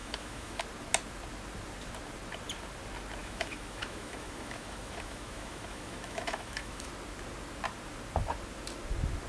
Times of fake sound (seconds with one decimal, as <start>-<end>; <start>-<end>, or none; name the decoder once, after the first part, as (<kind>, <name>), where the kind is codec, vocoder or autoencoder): 0.0-0.6 (autoencoder, DAC-VAE); 3.2-6.9